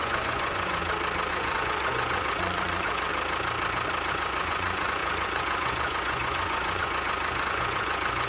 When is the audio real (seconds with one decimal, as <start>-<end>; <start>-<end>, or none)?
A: 0.8-1.3; 3.1-4.1

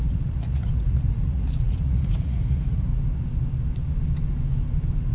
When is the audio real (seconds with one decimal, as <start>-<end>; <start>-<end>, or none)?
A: 2.9-5.1